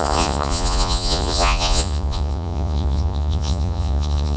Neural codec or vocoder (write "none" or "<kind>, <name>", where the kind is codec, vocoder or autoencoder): vocoder, Vocos